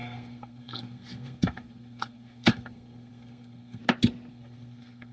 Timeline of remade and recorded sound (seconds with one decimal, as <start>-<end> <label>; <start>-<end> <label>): 0.0-3.8 remade; 3.8-4.3 recorded; 4.3-5.1 remade